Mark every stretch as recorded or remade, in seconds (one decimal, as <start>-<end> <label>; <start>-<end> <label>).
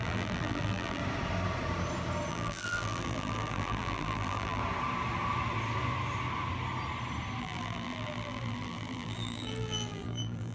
0.0-1.0 remade; 1.0-2.3 recorded; 2.3-4.6 remade; 4.6-7.4 recorded; 7.4-10.5 remade